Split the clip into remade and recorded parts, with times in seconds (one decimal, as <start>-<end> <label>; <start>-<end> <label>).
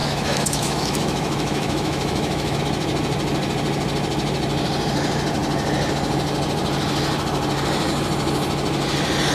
0.0-2.6 remade; 2.6-9.3 recorded